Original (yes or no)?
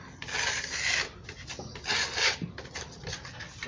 yes